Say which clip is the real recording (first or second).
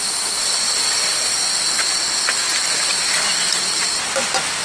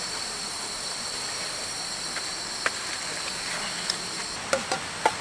first